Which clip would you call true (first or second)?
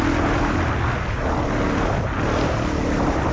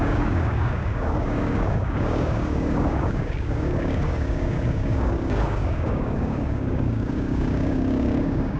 first